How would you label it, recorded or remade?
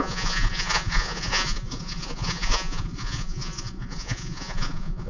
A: remade